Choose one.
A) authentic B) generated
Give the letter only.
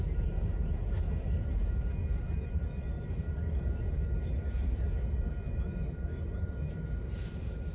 B